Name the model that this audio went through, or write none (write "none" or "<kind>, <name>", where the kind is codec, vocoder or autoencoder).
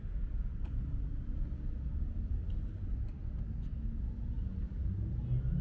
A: none